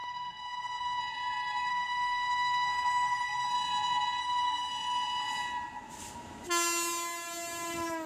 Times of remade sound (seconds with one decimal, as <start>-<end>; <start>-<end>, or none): 0.0-1.0; 1.7-3.5; 4.2-4.7